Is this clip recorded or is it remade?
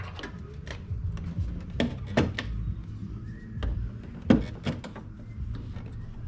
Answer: recorded